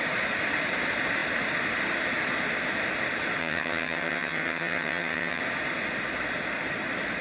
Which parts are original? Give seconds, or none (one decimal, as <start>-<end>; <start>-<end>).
0.0-3.4; 5.4-7.2